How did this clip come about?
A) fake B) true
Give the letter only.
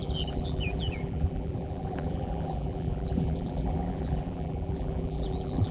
A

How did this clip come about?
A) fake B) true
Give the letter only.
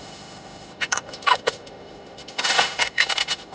A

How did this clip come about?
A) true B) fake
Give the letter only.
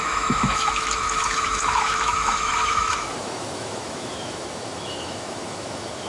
B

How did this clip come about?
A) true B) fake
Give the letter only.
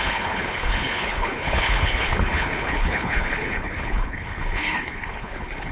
B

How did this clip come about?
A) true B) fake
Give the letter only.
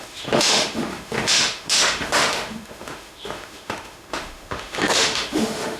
B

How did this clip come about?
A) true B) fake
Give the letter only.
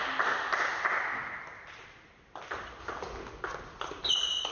A